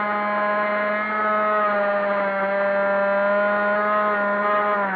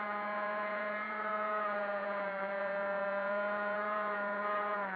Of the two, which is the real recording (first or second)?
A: first